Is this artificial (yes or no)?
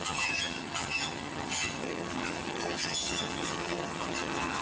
yes